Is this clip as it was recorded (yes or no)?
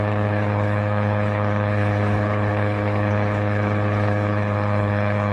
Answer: no